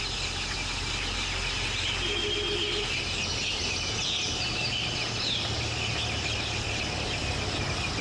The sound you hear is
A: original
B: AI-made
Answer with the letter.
A